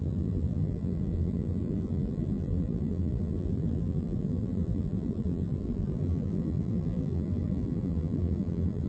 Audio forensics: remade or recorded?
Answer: remade